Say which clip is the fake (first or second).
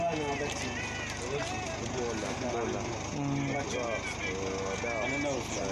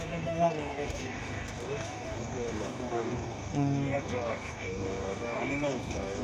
second